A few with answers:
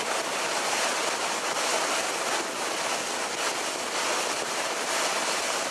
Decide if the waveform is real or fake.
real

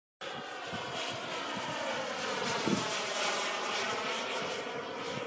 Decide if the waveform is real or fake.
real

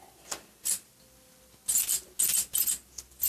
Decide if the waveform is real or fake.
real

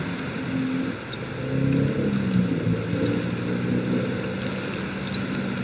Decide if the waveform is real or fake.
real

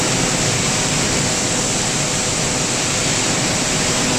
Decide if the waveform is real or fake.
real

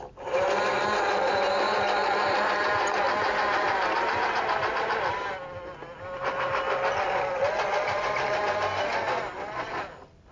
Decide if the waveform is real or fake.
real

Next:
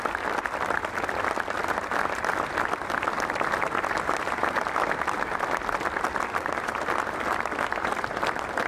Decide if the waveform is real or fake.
real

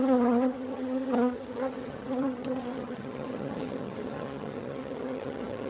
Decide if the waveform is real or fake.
fake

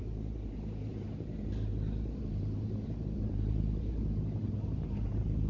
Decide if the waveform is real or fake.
fake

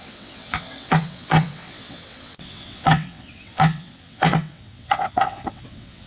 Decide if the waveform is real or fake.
fake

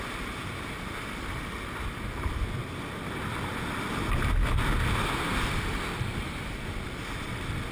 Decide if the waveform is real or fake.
real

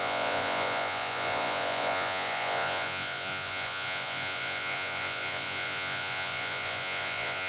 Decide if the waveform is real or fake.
fake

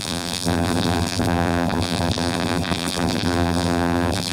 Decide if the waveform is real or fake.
fake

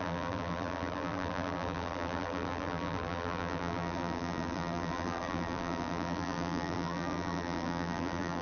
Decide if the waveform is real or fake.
fake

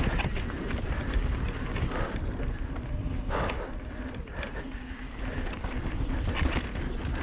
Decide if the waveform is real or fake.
real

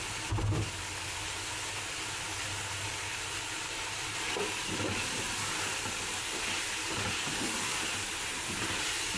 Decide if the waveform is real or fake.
real